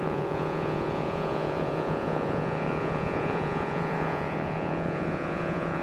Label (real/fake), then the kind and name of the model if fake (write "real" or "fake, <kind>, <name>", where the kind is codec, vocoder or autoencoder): fake, vocoder, Vocos